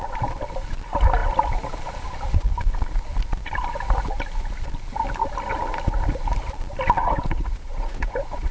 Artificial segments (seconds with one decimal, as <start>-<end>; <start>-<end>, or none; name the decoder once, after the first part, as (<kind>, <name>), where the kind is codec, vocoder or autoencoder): 7.0-8.5 (vocoder, Vocos)